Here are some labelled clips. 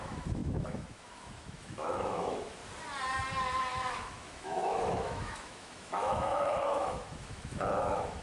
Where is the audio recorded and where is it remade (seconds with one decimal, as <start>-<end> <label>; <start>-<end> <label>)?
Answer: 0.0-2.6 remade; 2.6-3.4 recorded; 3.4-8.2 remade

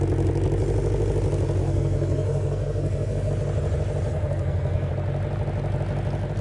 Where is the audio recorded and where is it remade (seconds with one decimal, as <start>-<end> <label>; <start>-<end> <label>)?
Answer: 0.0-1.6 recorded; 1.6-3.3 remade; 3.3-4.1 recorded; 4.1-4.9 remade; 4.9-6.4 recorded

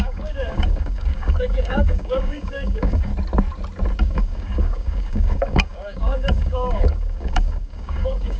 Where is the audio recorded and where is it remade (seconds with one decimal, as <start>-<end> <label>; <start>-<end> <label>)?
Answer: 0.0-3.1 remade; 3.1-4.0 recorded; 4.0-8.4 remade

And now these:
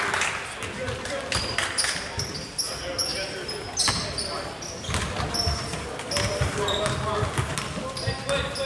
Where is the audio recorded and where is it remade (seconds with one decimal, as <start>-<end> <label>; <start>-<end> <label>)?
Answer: 0.0-8.7 recorded